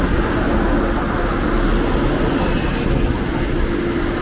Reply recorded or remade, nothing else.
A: recorded